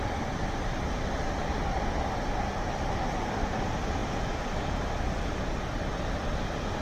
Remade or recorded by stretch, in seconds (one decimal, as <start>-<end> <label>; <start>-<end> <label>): 0.0-6.8 recorded